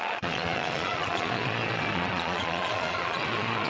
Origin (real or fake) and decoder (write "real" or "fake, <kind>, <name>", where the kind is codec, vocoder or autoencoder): fake, vocoder, Vocos